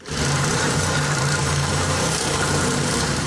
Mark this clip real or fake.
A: fake